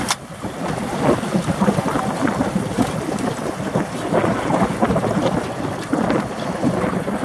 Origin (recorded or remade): recorded